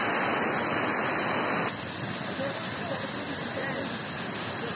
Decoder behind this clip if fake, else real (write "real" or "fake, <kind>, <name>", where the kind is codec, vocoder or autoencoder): real